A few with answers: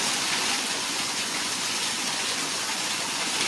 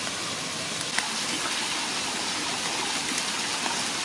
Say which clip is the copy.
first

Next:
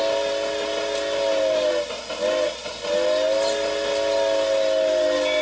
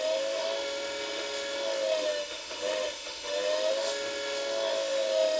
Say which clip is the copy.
second